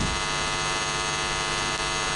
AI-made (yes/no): no